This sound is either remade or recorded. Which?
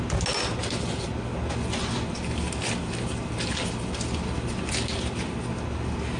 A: recorded